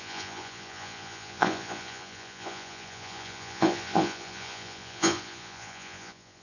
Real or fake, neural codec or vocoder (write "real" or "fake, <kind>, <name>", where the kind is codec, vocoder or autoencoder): fake, vocoder, Vocos